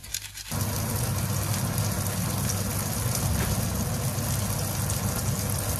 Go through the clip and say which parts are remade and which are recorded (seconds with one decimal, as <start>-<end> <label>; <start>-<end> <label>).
0.0-5.8 recorded